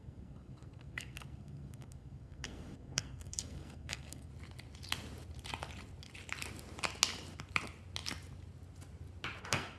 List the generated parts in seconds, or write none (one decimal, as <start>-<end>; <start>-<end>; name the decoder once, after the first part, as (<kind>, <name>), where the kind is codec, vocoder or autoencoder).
0.0-4.3 (codec, SNAC); 9.4-9.8